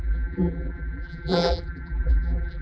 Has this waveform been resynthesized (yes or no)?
yes